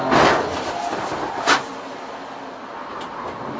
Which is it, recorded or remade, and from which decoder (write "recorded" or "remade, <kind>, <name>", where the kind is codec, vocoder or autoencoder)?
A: recorded